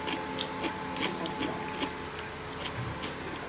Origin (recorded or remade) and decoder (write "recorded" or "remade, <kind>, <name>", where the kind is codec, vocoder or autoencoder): recorded